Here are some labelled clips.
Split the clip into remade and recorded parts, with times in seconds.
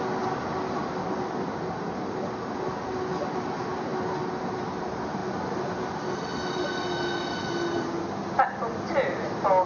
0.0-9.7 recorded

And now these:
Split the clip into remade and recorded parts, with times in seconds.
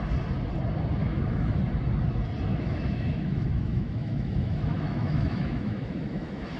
0.0-1.0 recorded; 1.0-1.6 remade; 1.6-2.5 recorded; 2.5-6.6 remade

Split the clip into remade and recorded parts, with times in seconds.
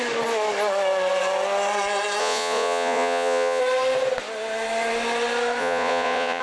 0.0-2.2 recorded; 2.2-3.6 remade; 3.6-5.6 recorded; 5.6-6.4 remade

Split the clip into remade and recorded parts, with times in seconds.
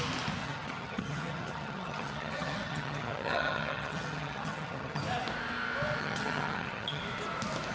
0.0-0.4 recorded; 0.4-5.0 remade; 5.0-6.0 recorded; 6.0-7.0 remade; 7.0-7.7 recorded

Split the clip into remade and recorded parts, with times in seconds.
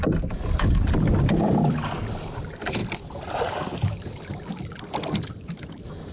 0.0-2.0 remade; 2.0-2.8 recorded; 2.8-6.1 remade